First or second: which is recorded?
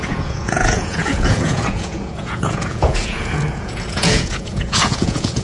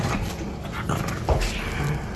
second